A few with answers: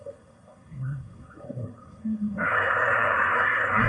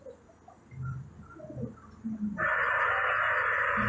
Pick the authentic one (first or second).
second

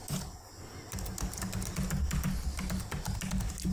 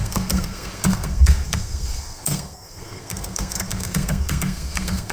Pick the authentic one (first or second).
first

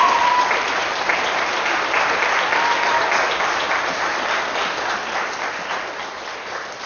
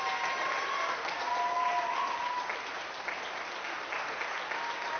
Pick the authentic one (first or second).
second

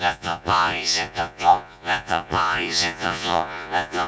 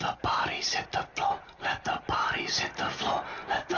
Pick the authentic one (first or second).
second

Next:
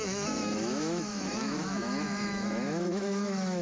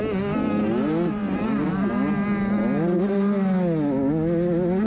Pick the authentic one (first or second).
second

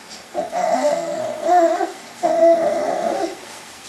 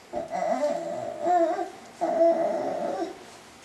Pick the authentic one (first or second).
second